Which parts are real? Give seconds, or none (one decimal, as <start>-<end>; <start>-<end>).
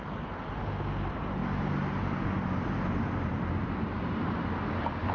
0.0-5.1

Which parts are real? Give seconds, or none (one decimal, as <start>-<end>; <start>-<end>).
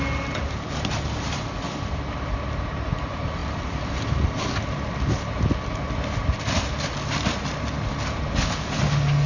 0.0-9.3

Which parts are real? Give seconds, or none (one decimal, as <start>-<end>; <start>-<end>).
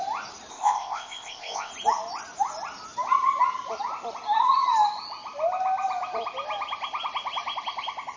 0.0-0.5; 1.7-8.2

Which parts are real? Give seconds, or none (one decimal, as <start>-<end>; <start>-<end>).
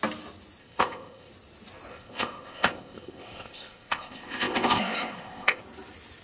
0.0-0.6; 1.3-1.9; 5.6-6.2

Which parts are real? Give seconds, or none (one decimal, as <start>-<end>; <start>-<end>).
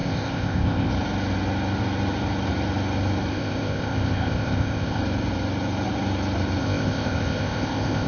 0.9-3.3; 5.0-6.6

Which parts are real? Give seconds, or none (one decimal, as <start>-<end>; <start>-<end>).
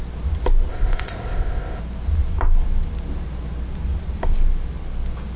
0.0-0.7; 1.8-5.4